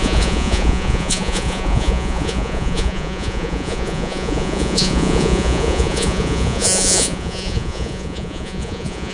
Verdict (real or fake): fake